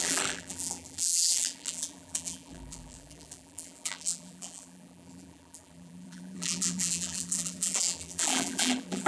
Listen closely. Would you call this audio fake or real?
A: fake